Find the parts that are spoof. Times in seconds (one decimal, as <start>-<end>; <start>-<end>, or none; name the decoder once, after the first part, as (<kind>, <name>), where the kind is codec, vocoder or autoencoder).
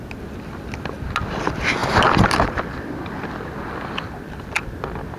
none